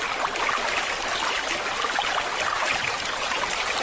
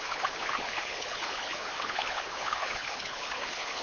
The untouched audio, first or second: first